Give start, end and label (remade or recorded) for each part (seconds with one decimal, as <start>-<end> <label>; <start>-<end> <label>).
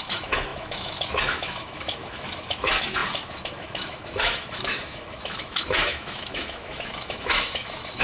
0.0-8.0 remade